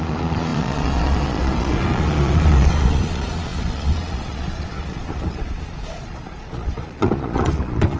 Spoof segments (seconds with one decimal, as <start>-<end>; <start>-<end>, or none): 0.0-8.0